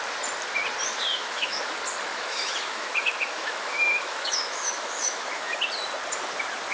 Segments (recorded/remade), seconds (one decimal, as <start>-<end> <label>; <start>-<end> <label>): 0.0-1.1 recorded; 1.1-1.6 remade; 1.6-2.1 recorded; 2.1-5.6 remade; 5.6-6.7 recorded